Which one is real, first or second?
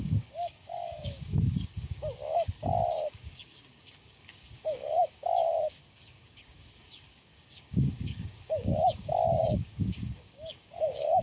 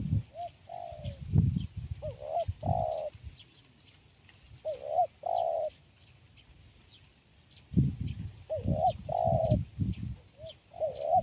second